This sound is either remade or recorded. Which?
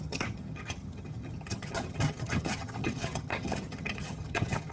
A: remade